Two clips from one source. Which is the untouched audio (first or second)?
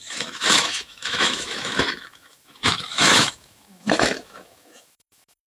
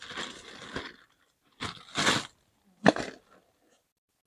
second